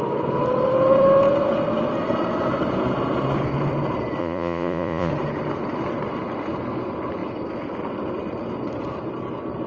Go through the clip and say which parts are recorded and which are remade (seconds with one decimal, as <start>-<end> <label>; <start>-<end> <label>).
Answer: 0.0-4.2 recorded; 4.2-5.1 remade; 5.1-9.7 recorded